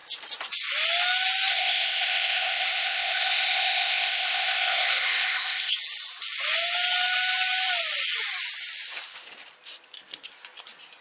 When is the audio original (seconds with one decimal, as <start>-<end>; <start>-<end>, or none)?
0.0-1.5; 5.7-11.0